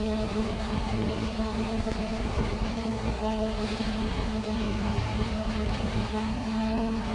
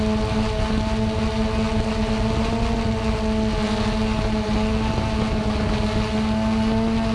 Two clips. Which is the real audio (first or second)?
second